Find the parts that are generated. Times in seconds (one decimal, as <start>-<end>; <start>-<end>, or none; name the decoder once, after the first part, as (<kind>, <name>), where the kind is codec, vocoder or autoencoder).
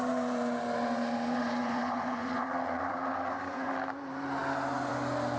1.6-3.7 (vocoder, Vocos)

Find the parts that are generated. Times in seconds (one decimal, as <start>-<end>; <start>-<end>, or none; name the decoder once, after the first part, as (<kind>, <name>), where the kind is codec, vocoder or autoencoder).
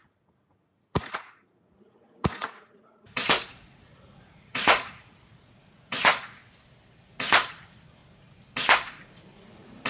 0.0-6.4 (vocoder, Vocos); 7.5-8.0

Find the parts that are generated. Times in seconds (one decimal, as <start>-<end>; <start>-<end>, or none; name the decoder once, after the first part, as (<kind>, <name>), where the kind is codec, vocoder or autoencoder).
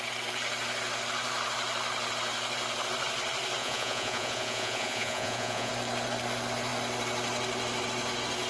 3.6-5.7 (vocoder, Vocos)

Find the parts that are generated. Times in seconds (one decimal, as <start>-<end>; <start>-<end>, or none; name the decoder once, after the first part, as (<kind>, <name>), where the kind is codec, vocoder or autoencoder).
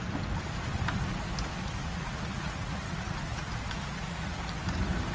1.8-4.4 (vocoder, Vocos)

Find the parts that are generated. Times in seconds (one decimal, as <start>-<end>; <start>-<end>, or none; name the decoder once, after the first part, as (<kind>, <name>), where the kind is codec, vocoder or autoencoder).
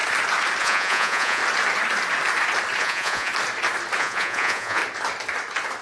0.6-1.4 (vocoder, Vocos); 2.8-3.3; 4.0-4.8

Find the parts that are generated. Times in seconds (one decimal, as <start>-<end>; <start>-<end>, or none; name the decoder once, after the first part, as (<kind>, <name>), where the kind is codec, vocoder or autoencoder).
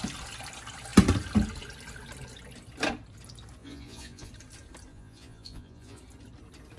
3.6-4.3 (vocoder, Vocos); 4.9-6.0